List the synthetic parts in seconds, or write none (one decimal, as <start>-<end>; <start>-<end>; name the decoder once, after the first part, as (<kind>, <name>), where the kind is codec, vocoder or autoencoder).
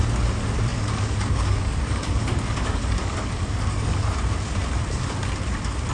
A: 0.7-4.2 (codec, DAC)